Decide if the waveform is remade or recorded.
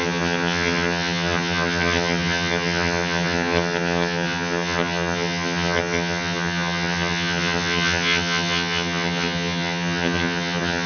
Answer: remade